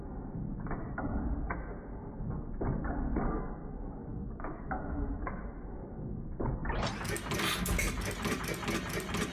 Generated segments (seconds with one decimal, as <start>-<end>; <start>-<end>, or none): 4.1-5.4